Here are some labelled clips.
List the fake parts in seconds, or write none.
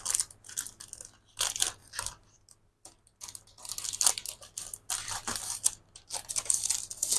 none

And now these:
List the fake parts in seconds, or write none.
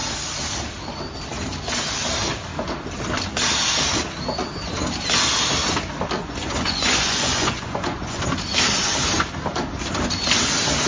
6.2-8.2 (vocoder, Vocos)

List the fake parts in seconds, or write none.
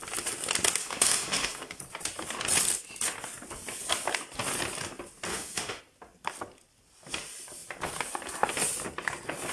0.8-1.8 (autoencoder, DAC-VAE); 5.3-5.8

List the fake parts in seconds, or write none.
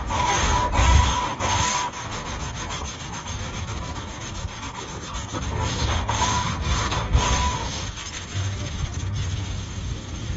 0.0-10.4 (codec, DAC)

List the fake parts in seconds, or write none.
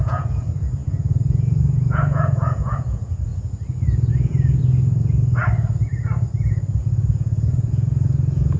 0.0-3.3 (vocoder, Vocos); 4.1-4.6; 7.1-8.6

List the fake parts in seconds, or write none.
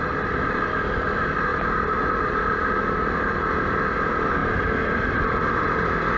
none